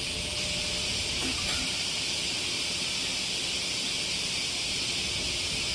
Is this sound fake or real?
real